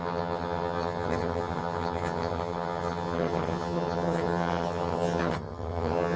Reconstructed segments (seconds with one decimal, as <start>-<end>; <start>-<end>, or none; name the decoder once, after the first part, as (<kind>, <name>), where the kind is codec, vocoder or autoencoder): 0.0-6.2 (vocoder, HiFi-GAN)